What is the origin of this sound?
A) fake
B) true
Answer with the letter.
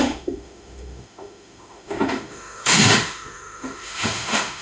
A